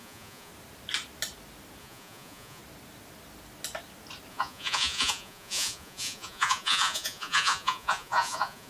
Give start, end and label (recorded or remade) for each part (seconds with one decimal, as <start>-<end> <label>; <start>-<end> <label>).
0.0-0.5 remade; 0.5-1.8 recorded; 1.8-2.6 remade; 2.6-4.3 recorded; 4.3-8.7 remade